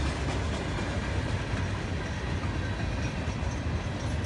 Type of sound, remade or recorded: recorded